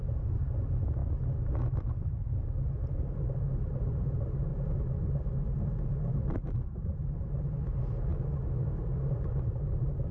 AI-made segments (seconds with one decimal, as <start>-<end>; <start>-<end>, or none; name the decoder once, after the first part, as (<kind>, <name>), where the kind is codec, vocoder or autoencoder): 0.0-1.0 (vocoder, BigVGAN v2); 1.9-4.5; 6.3-10.1